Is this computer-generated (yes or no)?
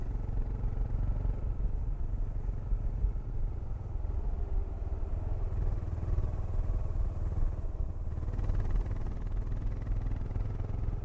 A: no